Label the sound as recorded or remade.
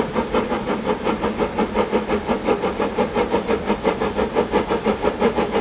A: recorded